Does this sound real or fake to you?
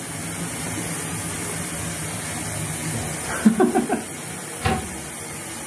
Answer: real